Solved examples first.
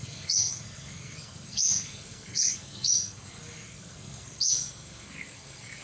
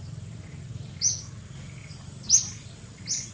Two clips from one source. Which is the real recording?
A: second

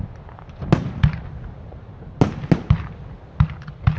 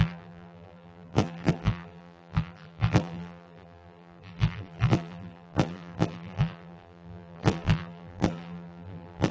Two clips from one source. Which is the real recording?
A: first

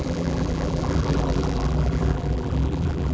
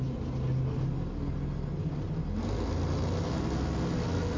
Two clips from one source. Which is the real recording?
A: second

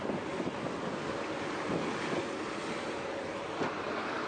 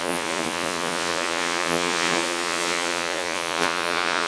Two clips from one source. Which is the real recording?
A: first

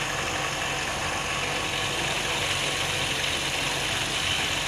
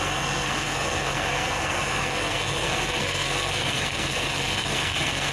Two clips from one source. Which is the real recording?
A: first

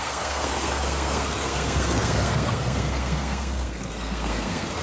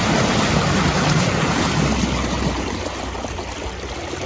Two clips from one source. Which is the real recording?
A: second